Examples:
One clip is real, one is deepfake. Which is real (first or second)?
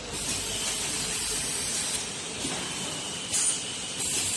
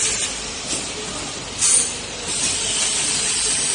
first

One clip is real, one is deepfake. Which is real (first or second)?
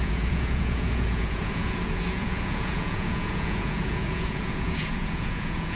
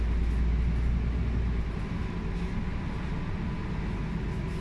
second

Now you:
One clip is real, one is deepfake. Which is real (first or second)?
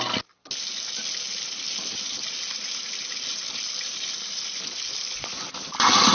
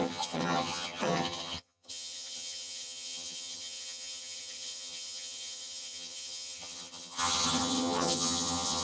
first